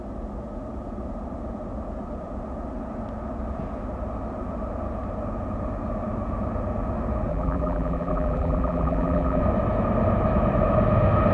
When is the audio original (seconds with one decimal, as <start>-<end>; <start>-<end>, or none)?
0.0-7.3; 9.4-11.3